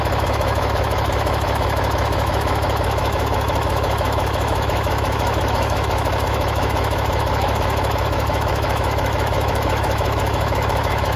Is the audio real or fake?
fake